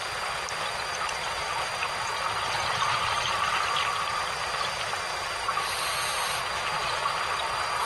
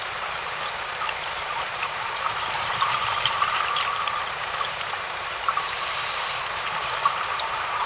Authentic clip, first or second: first